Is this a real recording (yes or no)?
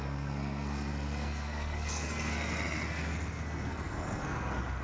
no